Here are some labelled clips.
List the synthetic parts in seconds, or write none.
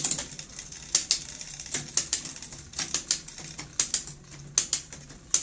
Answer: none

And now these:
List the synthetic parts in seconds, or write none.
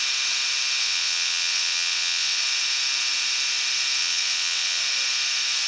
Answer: 0.8-2.4; 4.0-4.8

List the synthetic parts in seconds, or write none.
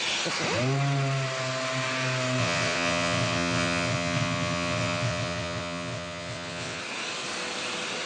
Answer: 2.4-6.8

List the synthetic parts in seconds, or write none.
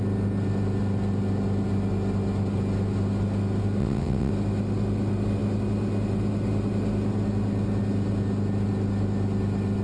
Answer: 3.8-4.3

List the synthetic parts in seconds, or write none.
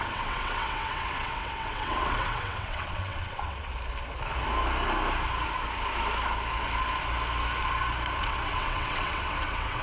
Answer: 0.0-3.7; 8.2-9.8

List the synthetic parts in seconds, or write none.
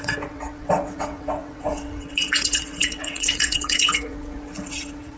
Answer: 0.0-5.2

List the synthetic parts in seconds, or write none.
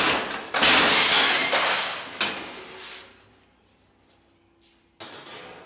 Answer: none